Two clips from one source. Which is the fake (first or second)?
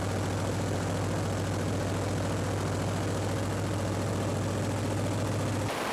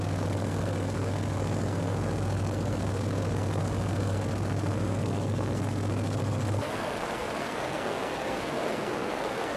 second